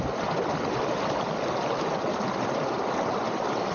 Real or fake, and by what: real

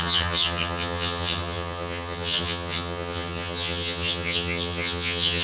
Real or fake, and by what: fake, vocoder, HiFi-GAN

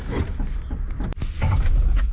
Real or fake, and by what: real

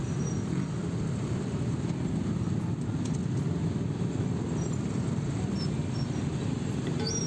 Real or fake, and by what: real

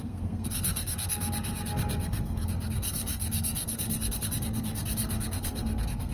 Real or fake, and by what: fake, codec, SNAC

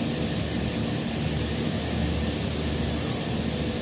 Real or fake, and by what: real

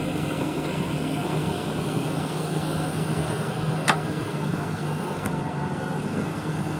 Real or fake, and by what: fake, codec, SNAC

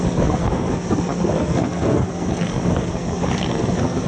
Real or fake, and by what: fake, codec, SNAC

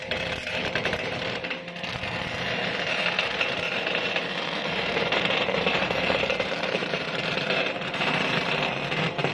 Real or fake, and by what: fake, vocoder, BigVGAN v2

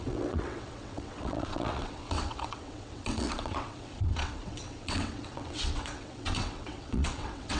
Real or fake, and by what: fake, vocoder, WaveNeXt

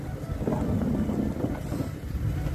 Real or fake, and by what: real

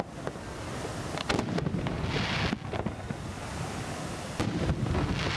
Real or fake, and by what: real